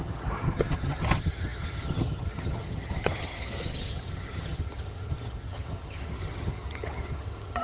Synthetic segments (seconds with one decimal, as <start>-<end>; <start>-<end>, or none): 0.0-7.6